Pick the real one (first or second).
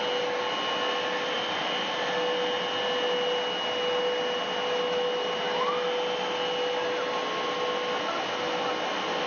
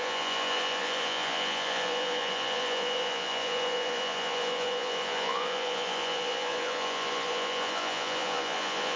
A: first